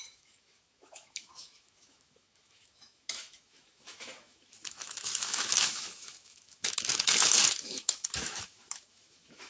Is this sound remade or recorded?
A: remade